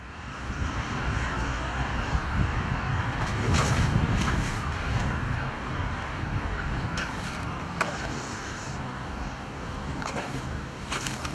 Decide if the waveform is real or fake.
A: fake